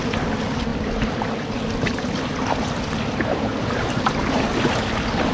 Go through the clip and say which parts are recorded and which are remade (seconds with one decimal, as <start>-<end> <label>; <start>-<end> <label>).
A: 0.0-0.7 recorded; 0.7-3.9 remade; 3.9-5.3 recorded